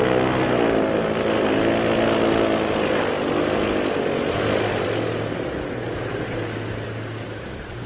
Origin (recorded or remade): recorded